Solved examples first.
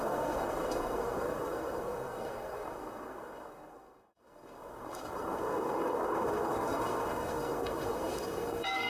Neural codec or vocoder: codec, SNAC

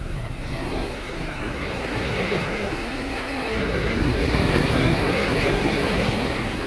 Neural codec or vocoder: codec, SNAC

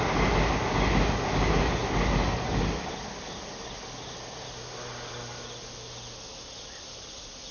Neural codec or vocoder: none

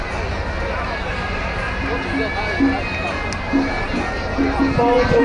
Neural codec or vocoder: none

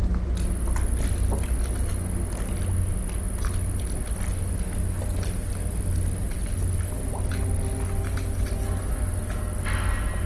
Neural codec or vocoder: none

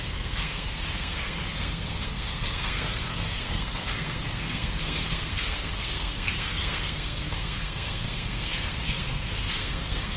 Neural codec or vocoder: codec, SNAC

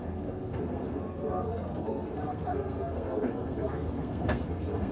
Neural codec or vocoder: codec, SNAC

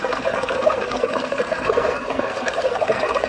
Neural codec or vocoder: codec, SNAC